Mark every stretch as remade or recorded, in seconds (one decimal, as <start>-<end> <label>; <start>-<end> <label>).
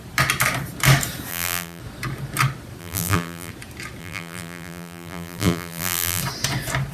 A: 0.0-1.3 recorded; 1.3-1.8 remade; 1.8-2.8 recorded; 2.8-3.5 remade; 3.5-4.0 recorded; 4.0-6.2 remade; 6.2-6.9 recorded